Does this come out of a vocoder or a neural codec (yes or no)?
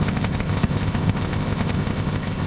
yes